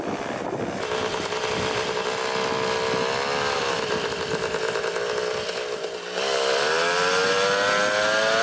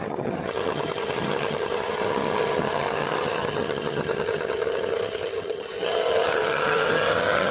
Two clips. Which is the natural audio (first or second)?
first